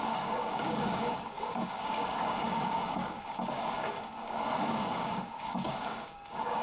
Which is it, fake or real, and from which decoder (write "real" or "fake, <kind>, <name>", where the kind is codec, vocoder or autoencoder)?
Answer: fake, codec, DAC